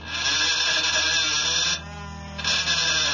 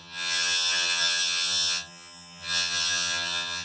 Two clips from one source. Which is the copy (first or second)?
second